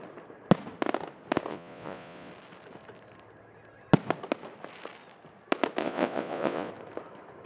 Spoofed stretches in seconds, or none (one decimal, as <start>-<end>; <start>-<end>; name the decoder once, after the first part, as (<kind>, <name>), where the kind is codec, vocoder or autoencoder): 1.5-2.3 (vocoder, Vocos); 5.8-6.7